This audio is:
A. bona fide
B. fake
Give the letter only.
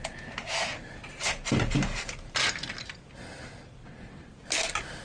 A